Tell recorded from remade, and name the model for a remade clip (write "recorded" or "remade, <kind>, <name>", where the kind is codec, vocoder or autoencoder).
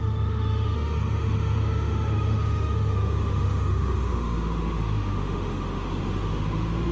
remade, autoencoder, DAC-VAE